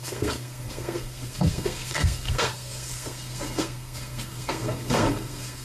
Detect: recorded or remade remade